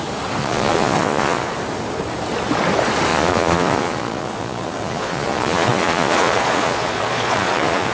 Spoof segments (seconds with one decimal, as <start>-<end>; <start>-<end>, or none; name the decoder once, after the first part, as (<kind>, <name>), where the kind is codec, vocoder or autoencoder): 0.4-1.5 (vocoder, Vocos); 3.1-7.9